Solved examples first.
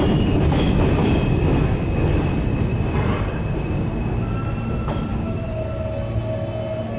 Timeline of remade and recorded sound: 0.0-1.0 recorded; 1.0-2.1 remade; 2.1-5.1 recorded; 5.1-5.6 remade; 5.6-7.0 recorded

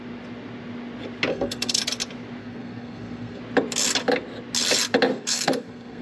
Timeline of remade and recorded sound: 0.0-1.3 recorded; 1.3-1.8 remade; 1.8-2.4 recorded; 2.4-3.4 remade; 3.4-5.1 recorded; 5.1-6.0 remade

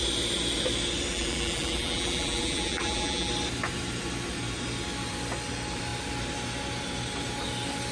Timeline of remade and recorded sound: 0.0-1.1 recorded; 1.1-3.3 remade; 3.3-7.9 recorded

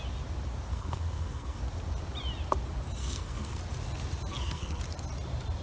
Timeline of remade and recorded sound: 0.0-0.7 recorded; 0.7-1.6 remade; 1.6-3.0 recorded; 3.0-3.6 remade; 3.6-4.3 recorded; 4.3-4.8 remade; 4.8-5.6 recorded

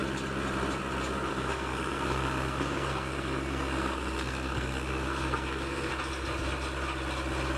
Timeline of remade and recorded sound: 0.0-1.3 recorded; 1.3-5.9 remade; 5.9-7.6 recorded

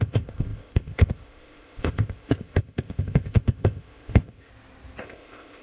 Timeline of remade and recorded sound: 0.0-4.5 remade; 4.5-5.0 recorded; 5.0-5.6 remade